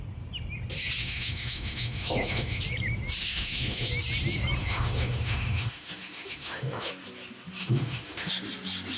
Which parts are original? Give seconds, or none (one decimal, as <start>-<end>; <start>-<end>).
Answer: 0.0-1.0; 2.6-3.2; 3.9-4.6; 6.9-7.6; 8.3-9.0